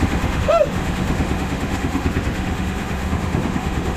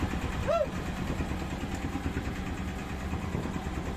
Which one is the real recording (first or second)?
second